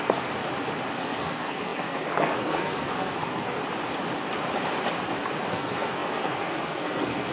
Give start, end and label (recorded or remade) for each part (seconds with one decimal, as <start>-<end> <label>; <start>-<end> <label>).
0.0-0.4 remade; 0.4-1.0 recorded; 1.0-3.6 remade; 3.6-5.5 recorded; 5.5-7.3 remade

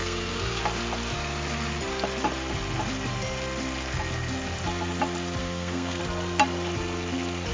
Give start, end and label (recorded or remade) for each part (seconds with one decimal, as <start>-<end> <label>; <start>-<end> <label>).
0.0-0.6 remade; 0.6-5.4 recorded; 5.4-6.0 remade; 6.0-7.5 recorded

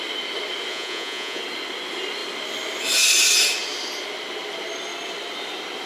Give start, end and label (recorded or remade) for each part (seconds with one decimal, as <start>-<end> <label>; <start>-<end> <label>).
0.0-0.7 recorded; 0.7-1.4 remade; 1.4-5.9 recorded

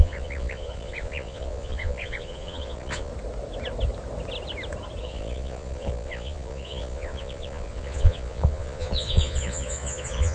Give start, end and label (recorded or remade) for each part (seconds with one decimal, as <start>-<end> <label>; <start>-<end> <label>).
0.0-3.1 remade; 3.1-5.0 recorded; 5.0-10.3 remade

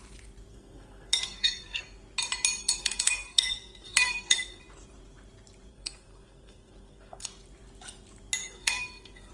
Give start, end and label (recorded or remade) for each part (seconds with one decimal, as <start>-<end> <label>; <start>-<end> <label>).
0.0-0.5 recorded; 0.5-1.8 remade; 1.8-2.6 recorded; 2.6-4.6 remade; 4.6-5.7 recorded; 5.7-7.3 remade; 7.3-8.4 recorded; 8.4-9.3 remade

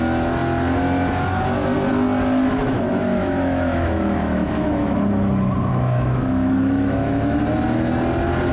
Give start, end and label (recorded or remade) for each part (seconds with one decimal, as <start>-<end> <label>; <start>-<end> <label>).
0.0-2.6 recorded; 2.6-5.0 remade; 5.0-5.7 recorded; 5.7-7.4 remade; 7.4-8.5 recorded

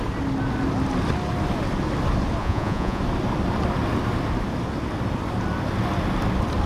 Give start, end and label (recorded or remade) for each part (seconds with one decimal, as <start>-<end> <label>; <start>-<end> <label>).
0.0-2.4 recorded; 2.4-3.0 remade; 3.0-6.7 recorded

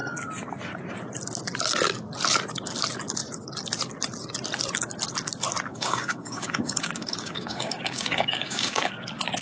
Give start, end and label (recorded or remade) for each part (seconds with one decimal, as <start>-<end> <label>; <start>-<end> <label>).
0.0-5.7 recorded; 5.7-8.9 remade; 8.9-9.4 recorded